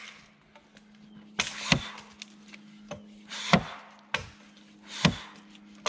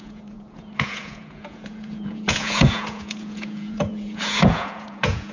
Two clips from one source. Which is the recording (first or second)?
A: first